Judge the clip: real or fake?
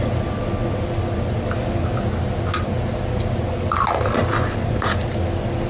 real